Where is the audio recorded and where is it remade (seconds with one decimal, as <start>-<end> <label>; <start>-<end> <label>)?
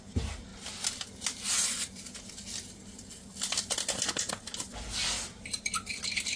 0.0-6.4 recorded